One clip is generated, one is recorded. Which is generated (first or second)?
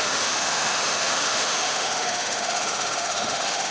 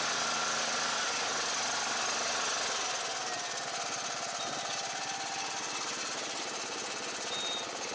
first